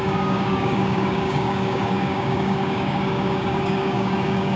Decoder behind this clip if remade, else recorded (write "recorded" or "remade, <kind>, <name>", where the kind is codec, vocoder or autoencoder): remade, codec, DAC